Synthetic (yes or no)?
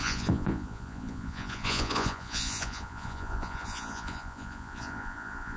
yes